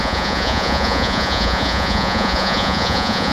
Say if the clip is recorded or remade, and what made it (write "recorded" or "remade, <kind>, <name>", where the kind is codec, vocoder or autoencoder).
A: remade, vocoder, Vocos